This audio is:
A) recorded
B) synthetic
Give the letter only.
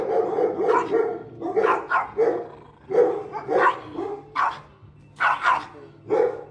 A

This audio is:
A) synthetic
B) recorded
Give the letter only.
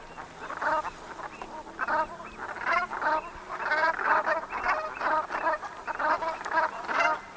B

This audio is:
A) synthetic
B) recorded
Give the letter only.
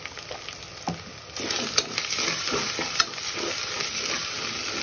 B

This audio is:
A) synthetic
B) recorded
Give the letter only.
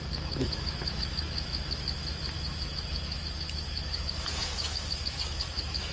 A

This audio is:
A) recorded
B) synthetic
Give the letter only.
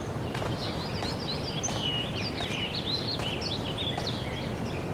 A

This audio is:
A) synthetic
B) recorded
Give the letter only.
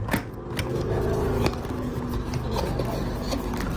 B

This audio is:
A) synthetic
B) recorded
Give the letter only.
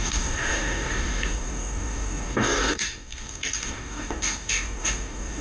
A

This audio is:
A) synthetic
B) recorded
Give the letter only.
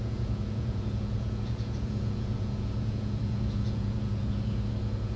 A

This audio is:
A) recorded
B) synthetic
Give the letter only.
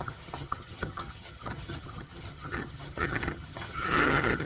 B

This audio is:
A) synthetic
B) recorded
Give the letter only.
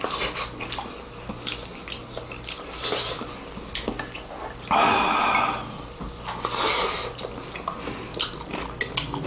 B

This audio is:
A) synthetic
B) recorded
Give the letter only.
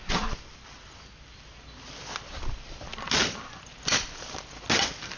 B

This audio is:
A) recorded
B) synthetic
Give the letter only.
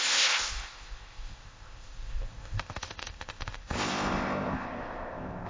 B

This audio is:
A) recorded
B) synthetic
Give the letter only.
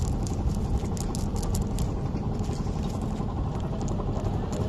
A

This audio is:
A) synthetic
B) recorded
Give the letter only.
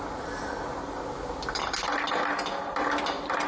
B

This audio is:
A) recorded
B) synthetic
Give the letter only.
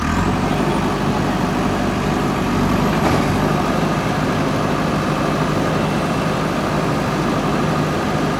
A